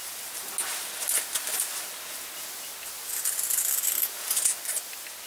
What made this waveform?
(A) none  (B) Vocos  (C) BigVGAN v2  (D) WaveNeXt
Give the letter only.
A